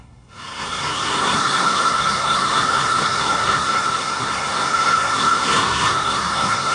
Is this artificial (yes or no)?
yes